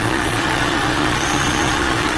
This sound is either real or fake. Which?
fake